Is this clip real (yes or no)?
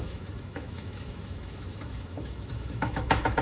no